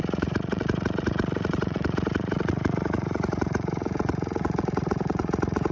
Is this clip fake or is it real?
fake